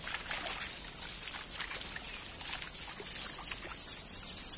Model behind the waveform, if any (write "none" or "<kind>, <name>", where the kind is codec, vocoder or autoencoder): none